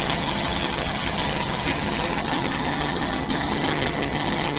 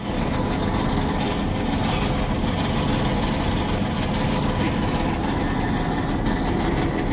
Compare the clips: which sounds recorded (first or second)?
second